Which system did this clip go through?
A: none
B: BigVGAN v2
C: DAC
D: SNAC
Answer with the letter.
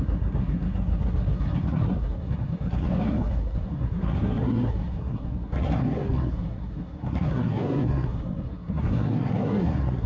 D